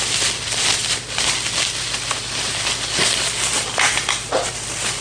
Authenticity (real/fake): real